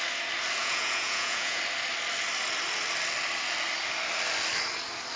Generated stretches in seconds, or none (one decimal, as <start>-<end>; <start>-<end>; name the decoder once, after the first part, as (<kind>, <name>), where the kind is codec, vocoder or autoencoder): 0.6-1.6 (vocoder, Vocos)